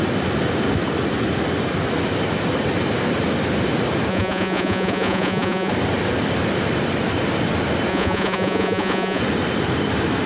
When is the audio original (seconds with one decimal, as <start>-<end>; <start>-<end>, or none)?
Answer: 0.0-4.1; 5.7-7.9; 9.2-10.3